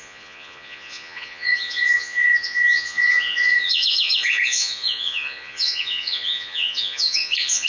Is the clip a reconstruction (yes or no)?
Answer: yes